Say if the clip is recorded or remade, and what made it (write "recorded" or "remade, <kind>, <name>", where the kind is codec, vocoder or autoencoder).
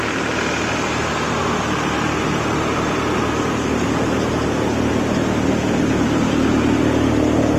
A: recorded